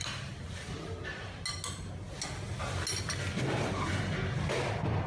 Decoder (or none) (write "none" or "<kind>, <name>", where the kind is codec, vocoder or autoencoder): none